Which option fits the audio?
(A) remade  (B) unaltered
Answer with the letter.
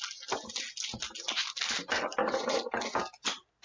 B